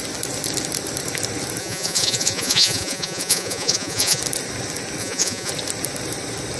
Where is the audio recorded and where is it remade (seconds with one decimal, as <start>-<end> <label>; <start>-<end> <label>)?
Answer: 0.0-1.6 recorded; 1.6-4.2 remade; 4.2-5.0 recorded; 5.0-5.5 remade; 5.5-6.6 recorded